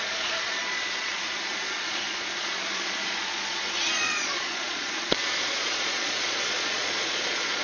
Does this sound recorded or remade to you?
remade